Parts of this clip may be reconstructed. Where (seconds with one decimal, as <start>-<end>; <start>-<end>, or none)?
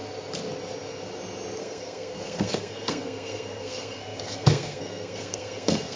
1.6-6.0